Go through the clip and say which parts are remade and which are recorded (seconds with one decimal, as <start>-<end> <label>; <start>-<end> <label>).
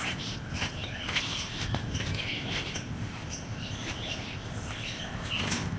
0.0-5.8 remade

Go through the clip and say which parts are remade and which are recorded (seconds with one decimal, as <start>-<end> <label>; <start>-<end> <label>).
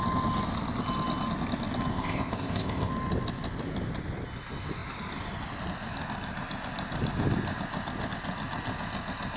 0.0-1.9 recorded; 1.9-2.9 remade; 2.9-9.4 recorded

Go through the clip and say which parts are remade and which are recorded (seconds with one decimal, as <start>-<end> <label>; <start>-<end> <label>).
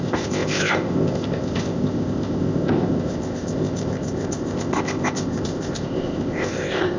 0.0-7.0 remade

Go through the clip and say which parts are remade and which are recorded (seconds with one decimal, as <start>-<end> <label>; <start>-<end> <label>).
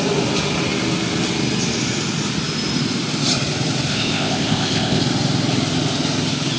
0.0-3.9 recorded; 3.9-5.0 remade; 5.0-6.6 recorded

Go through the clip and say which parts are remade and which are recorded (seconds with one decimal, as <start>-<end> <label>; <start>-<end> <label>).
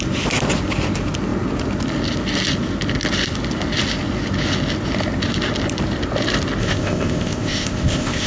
0.0-6.6 recorded; 6.6-8.3 remade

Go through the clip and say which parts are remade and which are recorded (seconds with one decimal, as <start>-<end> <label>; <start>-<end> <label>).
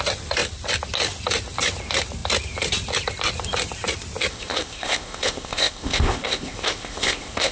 0.0-4.3 recorded; 4.3-7.5 remade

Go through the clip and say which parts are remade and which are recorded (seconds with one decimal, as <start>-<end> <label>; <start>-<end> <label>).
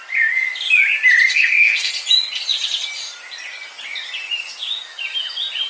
0.0-1.3 recorded; 1.3-1.9 remade; 1.9-5.7 recorded